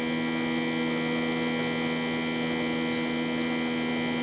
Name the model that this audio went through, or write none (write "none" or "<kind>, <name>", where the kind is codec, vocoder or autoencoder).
none